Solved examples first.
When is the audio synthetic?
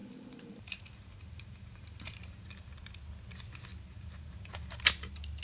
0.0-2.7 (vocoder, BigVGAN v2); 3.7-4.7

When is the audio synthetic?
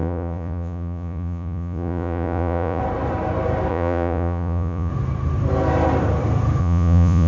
0.0-2.8 (vocoder, Vocos); 3.7-4.9; 6.6-7.3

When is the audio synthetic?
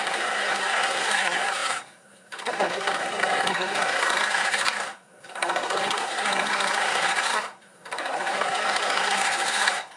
0.0-10.0 (codec, SNAC)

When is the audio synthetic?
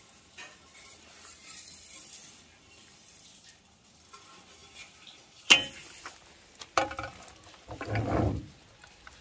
none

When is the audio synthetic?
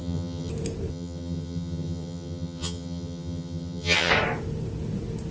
0.0-0.5 (vocoder, HiFi-GAN); 0.9-4.1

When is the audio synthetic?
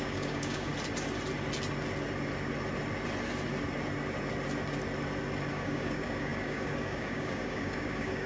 0.0-0.7 (codec, DAC); 5.5-8.3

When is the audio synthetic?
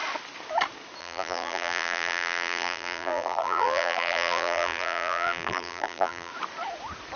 1.0-6.3 (vocoder, BigVGAN v2)